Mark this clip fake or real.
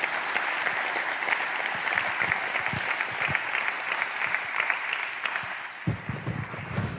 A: real